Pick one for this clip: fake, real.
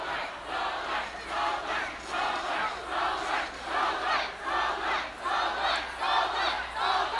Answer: real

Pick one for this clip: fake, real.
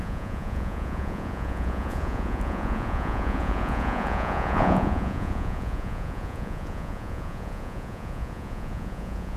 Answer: fake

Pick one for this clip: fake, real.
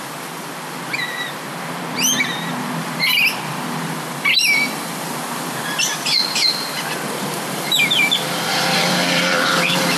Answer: fake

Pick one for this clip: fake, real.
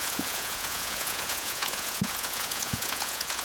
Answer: fake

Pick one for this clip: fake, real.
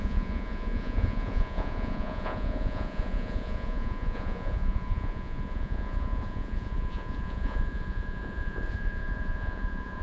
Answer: fake